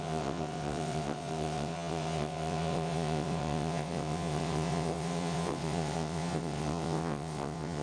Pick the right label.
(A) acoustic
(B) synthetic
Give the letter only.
B